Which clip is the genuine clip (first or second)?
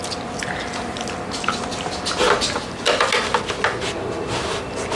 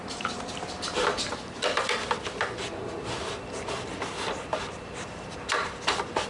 first